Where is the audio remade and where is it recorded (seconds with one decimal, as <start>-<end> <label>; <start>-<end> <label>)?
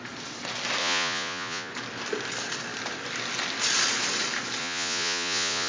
0.0-0.8 recorded; 0.8-1.7 remade; 1.7-4.6 recorded; 4.6-5.7 remade